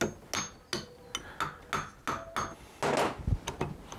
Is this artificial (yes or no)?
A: no